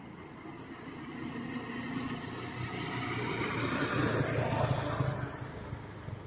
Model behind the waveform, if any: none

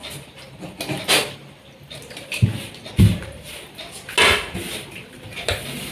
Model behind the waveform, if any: none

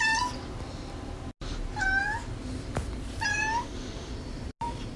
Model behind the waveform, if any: none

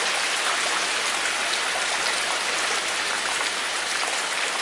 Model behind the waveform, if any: none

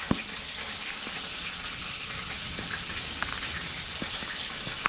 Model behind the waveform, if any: none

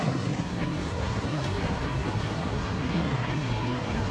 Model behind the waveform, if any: codec, SNAC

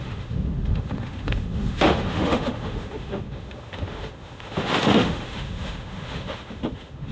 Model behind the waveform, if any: autoencoder, DAC-VAE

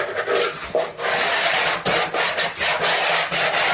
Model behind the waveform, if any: none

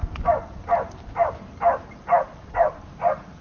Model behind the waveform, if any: none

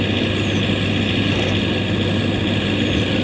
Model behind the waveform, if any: none